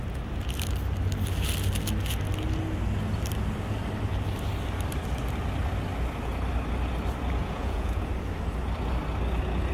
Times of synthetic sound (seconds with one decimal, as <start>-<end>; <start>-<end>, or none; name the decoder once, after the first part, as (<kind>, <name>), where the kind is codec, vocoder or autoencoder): 7.4-8.0 (vocoder, Vocos)